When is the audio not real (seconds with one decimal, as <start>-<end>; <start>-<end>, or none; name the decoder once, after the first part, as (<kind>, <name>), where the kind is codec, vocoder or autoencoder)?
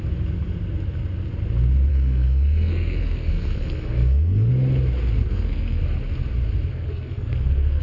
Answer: 1.9-4.5 (codec, SNAC); 5.2-5.8; 6.7-7.8